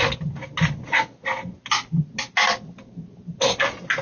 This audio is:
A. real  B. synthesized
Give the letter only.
A